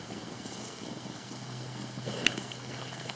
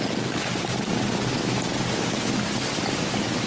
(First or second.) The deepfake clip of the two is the first